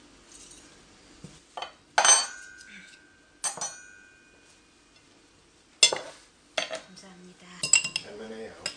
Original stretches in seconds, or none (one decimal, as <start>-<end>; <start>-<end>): 0.0-8.8